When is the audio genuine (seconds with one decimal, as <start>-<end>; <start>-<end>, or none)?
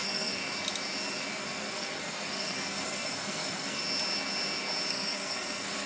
0.4-1.4; 3.8-4.9